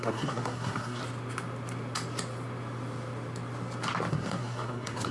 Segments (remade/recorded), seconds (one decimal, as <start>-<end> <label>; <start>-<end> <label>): 0.0-1.0 remade; 1.0-4.1 recorded; 4.1-5.1 remade